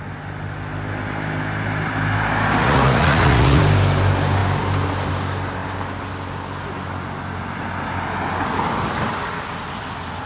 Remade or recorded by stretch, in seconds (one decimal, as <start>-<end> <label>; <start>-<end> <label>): 0.0-2.6 recorded; 2.6-3.6 remade; 3.6-10.3 recorded